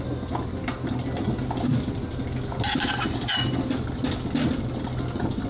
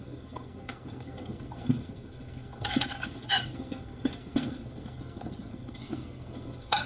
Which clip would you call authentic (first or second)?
first